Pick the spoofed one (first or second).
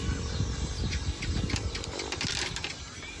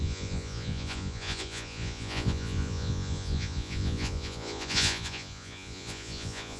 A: second